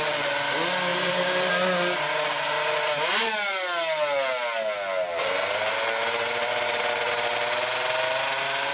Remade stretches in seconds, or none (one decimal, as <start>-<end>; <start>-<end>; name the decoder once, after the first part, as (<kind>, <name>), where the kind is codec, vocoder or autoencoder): 0.9-1.5 (vocoder, BigVGAN v2); 6.4-7.1